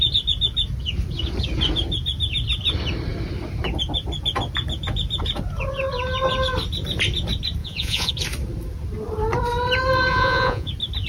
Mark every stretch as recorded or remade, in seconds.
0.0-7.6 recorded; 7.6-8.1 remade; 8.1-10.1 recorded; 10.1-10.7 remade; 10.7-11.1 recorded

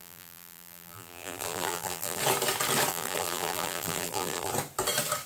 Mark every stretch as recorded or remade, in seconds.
0.0-2.2 remade; 2.2-2.9 recorded; 2.9-4.5 remade; 4.5-5.3 recorded